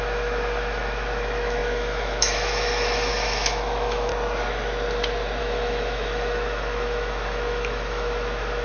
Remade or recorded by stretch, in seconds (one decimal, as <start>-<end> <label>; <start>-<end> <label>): 0.0-4.1 remade; 4.1-5.4 recorded; 5.4-8.6 remade